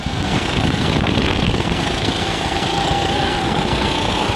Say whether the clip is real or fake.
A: fake